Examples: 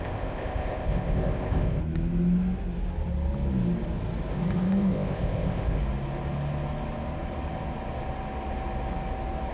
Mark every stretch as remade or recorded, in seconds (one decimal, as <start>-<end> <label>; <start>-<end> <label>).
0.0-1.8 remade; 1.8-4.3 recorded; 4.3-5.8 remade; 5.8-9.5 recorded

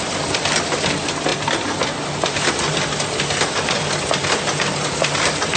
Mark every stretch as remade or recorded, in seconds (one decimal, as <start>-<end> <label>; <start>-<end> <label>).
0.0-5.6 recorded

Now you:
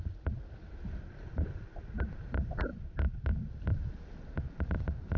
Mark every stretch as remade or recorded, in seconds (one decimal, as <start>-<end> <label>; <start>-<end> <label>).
0.0-5.2 recorded

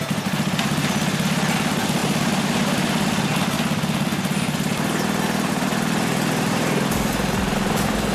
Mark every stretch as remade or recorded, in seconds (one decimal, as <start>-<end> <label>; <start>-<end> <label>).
0.0-8.1 recorded

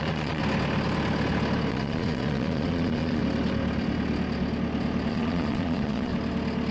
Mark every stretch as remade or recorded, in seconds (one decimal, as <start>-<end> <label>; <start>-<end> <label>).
0.0-0.4 remade; 0.4-1.7 recorded; 1.7-3.2 remade; 3.2-5.1 recorded; 5.1-6.1 remade; 6.1-6.7 recorded

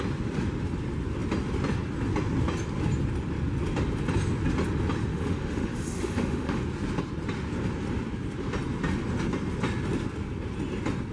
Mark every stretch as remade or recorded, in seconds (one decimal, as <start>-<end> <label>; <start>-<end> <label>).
0.0-5.1 recorded; 5.1-6.6 remade; 6.6-11.1 recorded

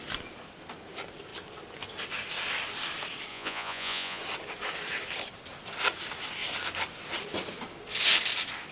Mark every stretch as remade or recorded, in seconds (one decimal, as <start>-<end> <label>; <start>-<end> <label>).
0.0-3.3 recorded; 3.3-4.2 remade; 4.2-8.7 recorded

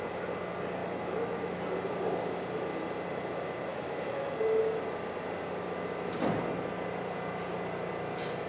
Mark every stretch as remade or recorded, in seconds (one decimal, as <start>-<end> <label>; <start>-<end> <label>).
0.0-0.8 recorded; 0.8-1.6 remade; 1.6-3.7 recorded; 3.7-4.6 remade; 4.6-8.5 recorded